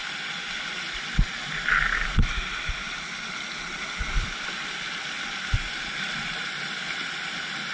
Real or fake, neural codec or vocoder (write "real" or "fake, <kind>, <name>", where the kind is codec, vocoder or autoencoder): real